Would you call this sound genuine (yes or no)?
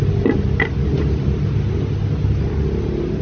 yes